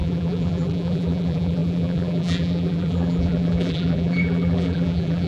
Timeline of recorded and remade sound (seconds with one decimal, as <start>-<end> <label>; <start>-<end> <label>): 0.0-5.3 remade